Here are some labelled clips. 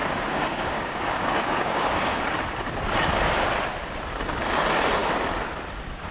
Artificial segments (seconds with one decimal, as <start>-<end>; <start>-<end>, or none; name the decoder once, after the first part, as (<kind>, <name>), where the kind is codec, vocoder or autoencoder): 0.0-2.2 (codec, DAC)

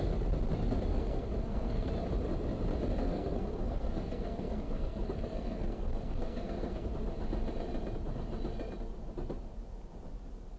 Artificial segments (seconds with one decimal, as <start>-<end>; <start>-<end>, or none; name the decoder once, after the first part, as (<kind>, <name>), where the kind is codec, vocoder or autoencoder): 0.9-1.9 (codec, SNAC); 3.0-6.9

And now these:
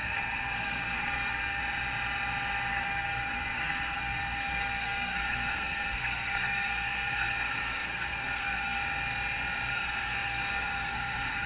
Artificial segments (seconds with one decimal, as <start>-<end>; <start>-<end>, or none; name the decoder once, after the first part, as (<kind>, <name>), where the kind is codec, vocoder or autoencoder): 0.0-1.6 (codec, SNAC); 2.7-8.8; 9.7-11.5

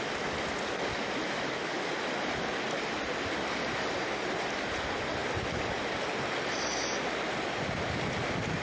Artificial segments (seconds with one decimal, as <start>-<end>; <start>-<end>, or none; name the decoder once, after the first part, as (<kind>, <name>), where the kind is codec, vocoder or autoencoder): none

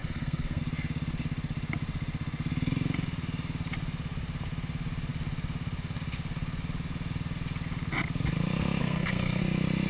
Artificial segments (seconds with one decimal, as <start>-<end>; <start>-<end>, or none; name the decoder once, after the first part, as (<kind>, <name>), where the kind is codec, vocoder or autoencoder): 0.0-0.6 (codec, SNAC); 8.8-9.4

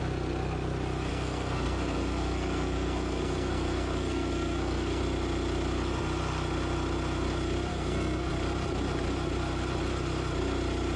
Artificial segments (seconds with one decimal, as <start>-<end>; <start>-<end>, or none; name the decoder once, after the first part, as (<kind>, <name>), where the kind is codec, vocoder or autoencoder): 1.1-5.0 (codec, SNAC); 7.7-8.3

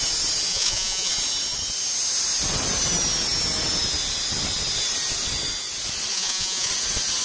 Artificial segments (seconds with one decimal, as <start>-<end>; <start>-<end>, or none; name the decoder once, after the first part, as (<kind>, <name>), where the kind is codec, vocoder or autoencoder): 0.5-1.1 (vocoder, Vocos); 6.1-6.7

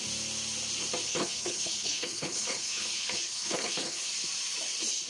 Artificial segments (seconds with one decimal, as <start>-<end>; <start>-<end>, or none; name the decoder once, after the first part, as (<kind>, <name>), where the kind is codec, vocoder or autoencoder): 1.0-4.1 (codec, HILCodec)